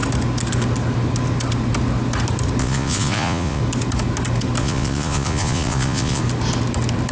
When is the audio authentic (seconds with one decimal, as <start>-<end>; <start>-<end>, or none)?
0.0-2.6; 3.6-4.6; 6.2-7.1